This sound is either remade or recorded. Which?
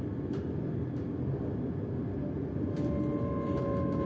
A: recorded